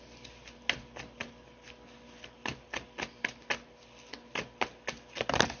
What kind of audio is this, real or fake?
real